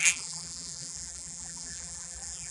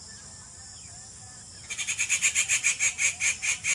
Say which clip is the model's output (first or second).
first